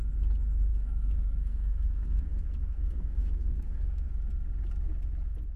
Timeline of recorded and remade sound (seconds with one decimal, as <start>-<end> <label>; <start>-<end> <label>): 0.0-0.7 recorded; 0.7-4.1 remade; 4.1-5.6 recorded